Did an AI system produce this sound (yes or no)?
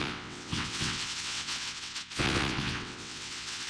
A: yes